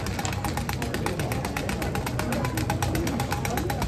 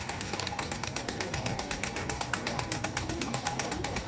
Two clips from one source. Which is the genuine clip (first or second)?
first